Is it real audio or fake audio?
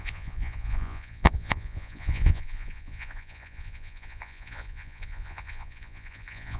fake